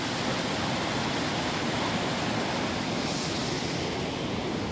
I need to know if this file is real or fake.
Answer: real